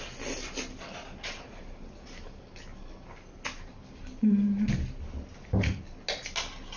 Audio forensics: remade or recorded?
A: recorded